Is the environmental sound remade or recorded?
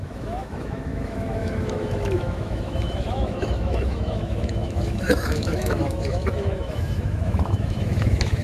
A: remade